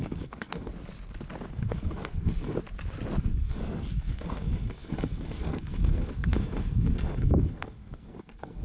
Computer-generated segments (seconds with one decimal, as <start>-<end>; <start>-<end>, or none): 0.0-0.7; 1.5-2.6; 3.2-8.6